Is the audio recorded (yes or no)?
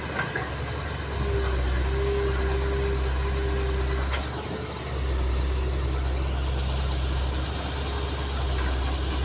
yes